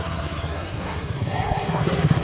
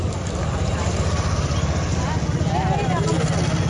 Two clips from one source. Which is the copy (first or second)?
first